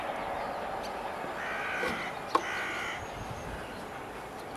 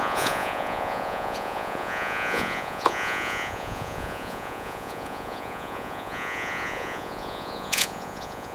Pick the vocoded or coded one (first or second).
second